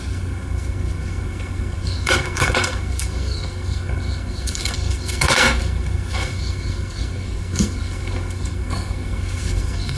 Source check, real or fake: fake